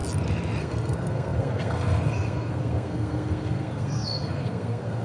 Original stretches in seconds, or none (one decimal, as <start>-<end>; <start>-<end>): 0.0-0.6